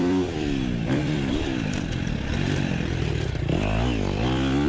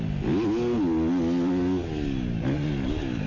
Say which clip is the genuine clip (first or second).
second